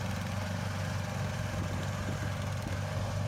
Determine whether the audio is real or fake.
real